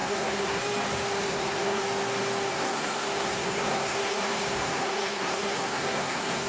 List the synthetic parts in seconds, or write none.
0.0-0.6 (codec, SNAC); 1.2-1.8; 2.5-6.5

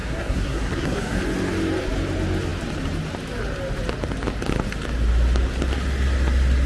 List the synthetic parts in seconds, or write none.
0.0-1.2 (codec, SNAC)

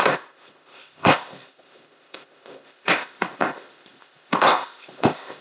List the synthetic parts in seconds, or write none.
0.0-5.4 (codec, ZipCodec)

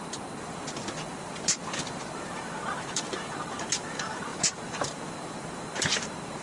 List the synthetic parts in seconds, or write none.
0.0-6.4 (vocoder, BigVGAN v2)

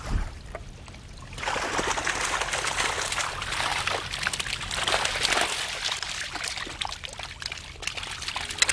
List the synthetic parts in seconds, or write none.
none